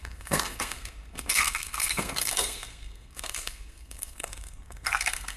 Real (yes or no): no